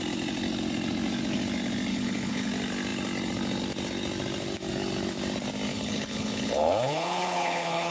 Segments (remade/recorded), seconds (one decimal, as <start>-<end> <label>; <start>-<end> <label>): 0.0-1.9 recorded; 1.9-2.5 remade; 2.5-5.7 recorded; 5.7-7.9 remade